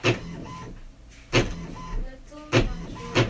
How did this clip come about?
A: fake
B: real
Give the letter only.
B